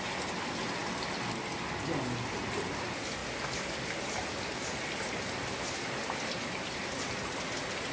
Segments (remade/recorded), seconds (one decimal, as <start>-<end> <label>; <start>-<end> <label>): 0.0-7.9 recorded